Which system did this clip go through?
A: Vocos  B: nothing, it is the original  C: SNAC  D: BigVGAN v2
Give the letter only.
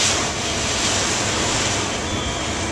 B